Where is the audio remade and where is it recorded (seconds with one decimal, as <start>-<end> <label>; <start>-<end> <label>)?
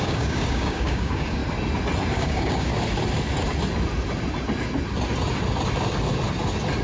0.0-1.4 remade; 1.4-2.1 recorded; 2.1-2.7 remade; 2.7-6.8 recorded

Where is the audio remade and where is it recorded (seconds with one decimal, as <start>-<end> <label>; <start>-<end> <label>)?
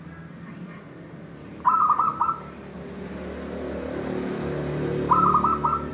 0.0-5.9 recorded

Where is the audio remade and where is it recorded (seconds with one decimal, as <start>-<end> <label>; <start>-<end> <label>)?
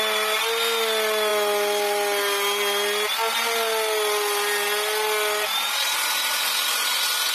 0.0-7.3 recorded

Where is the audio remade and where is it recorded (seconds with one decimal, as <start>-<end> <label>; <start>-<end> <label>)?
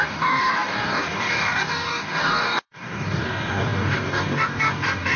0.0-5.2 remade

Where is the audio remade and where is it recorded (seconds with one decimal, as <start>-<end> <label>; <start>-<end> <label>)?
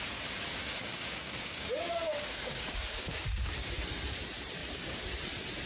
0.0-0.6 recorded; 0.6-3.8 remade; 3.8-4.6 recorded; 4.6-5.2 remade; 5.2-5.7 recorded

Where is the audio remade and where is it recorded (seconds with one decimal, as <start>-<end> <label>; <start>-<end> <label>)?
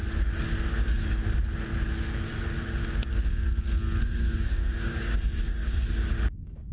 0.0-4.0 recorded; 4.0-6.7 remade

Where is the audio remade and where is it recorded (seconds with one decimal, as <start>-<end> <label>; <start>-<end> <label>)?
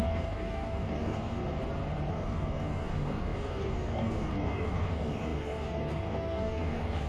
0.0-1.4 remade; 1.4-2.1 recorded; 2.1-7.1 remade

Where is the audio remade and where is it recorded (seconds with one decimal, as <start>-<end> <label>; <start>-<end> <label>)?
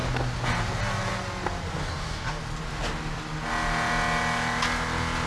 0.0-1.8 recorded; 1.8-2.4 remade; 2.4-5.3 recorded